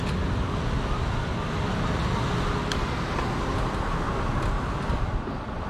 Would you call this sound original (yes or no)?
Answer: yes